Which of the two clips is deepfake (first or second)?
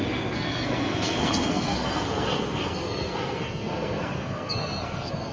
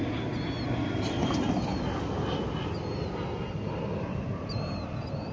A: first